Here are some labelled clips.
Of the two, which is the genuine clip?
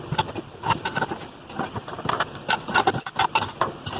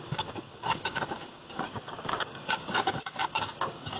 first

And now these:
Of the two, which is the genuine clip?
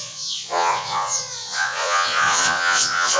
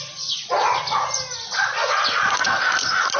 second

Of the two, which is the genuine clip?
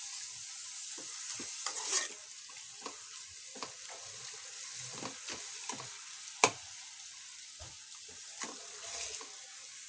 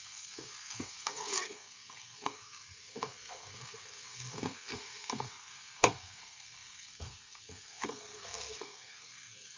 first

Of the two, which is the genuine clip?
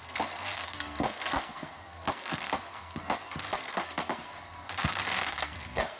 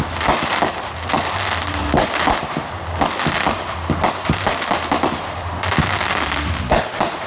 second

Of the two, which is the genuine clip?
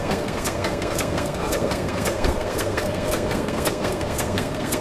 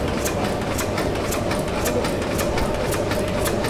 second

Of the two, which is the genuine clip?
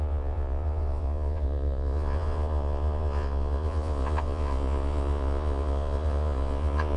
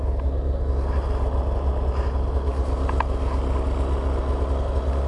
second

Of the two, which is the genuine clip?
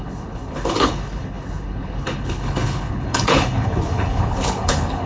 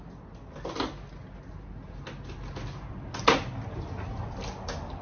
second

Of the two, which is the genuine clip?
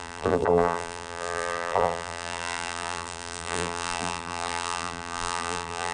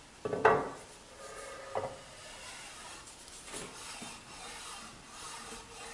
second